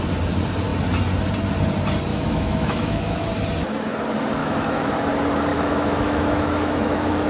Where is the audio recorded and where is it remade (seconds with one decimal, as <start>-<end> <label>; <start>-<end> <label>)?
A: 0.0-2.1 recorded; 2.1-3.3 remade; 3.3-4.4 recorded; 4.4-4.9 remade; 4.9-5.5 recorded; 5.5-7.3 remade

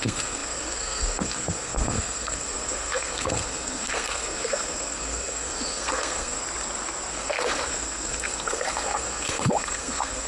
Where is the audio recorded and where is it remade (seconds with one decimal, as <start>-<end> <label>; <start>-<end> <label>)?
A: 0.0-6.4 remade; 6.4-7.1 recorded; 7.1-10.3 remade

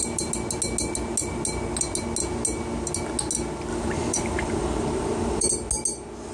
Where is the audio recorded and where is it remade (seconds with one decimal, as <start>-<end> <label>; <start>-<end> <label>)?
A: 0.0-3.7 recorded; 3.7-5.5 remade; 5.5-6.3 recorded

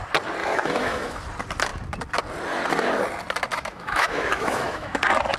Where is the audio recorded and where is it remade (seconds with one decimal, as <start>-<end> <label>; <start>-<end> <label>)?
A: 0.0-0.4 recorded; 0.4-1.2 remade; 1.2-3.5 recorded; 3.5-5.0 remade; 5.0-5.4 recorded

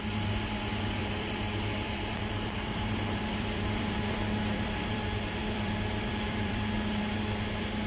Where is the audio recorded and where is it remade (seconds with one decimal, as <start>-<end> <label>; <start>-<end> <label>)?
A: 0.0-1.0 recorded; 1.0-5.0 remade; 5.0-5.4 recorded; 5.4-7.0 remade; 7.0-7.9 recorded

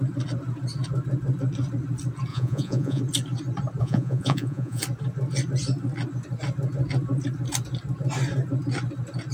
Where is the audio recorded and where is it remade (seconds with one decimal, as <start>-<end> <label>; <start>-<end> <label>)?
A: 0.0-2.3 recorded; 2.3-3.0 remade; 3.0-3.8 recorded; 3.8-4.8 remade; 4.8-9.3 recorded

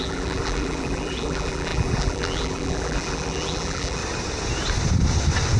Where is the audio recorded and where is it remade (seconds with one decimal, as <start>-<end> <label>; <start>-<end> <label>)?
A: 0.0-4.0 remade; 4.0-5.6 recorded